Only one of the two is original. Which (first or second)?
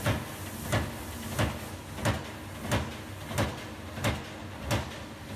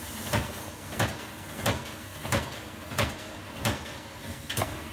first